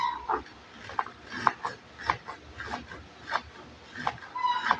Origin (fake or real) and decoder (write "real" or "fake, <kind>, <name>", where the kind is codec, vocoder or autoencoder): real